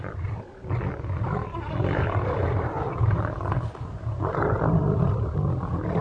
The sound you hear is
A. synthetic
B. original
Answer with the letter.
B